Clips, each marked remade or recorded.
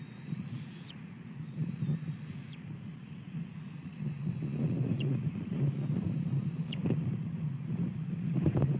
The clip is remade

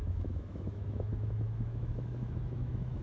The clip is remade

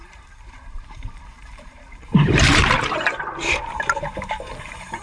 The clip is remade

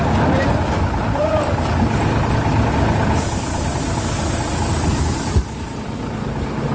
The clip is recorded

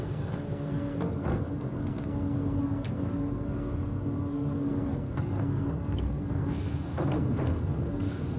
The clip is remade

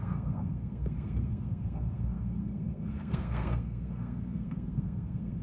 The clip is remade